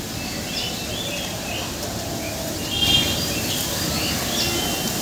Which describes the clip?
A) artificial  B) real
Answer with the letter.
B